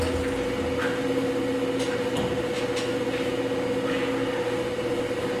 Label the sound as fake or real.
real